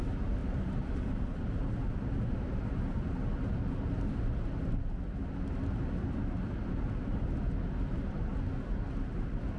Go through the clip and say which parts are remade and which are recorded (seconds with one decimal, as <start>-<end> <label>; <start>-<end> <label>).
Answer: 0.0-0.4 recorded; 0.4-1.2 remade; 1.2-9.6 recorded